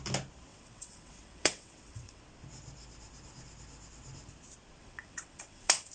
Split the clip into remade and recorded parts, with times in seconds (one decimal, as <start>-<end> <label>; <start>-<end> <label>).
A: 0.0-0.5 recorded; 0.5-2.2 remade; 2.2-4.8 recorded; 4.8-5.9 remade